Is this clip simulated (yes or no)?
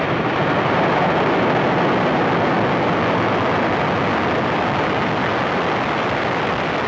no